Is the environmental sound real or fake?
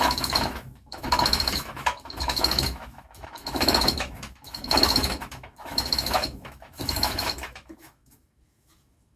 fake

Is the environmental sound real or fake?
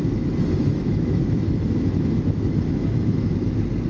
fake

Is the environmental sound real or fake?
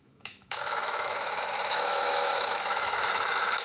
fake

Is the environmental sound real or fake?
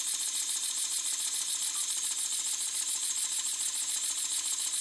real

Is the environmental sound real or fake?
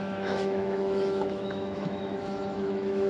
fake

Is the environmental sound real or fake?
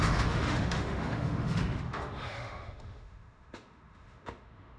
fake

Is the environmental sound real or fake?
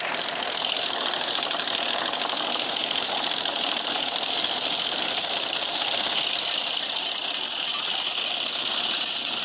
real